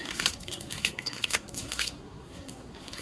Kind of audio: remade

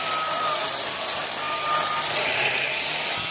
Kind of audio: recorded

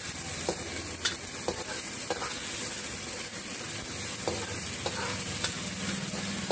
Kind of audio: recorded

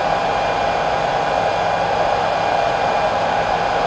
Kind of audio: recorded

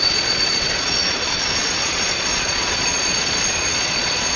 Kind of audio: remade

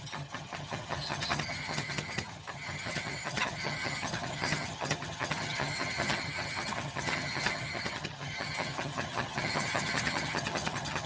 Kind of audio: remade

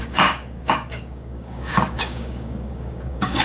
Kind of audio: remade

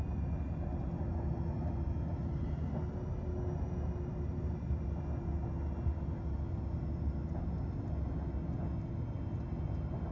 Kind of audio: recorded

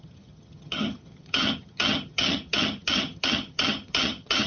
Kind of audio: remade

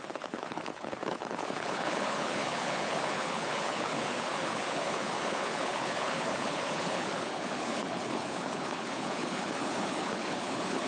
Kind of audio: remade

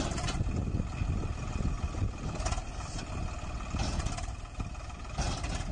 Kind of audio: recorded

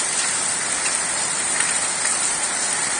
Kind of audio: remade